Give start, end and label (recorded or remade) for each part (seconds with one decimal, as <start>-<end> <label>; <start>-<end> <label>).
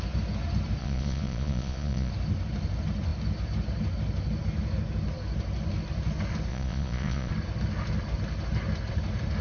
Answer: 0.0-0.8 recorded; 0.8-2.1 remade; 2.1-6.5 recorded; 6.5-7.3 remade; 7.3-9.4 recorded